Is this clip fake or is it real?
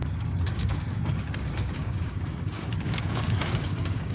fake